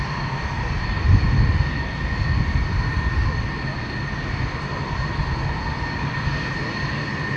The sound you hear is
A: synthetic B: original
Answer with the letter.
B